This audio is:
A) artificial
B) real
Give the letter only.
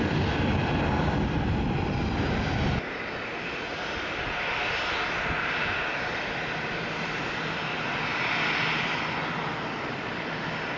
B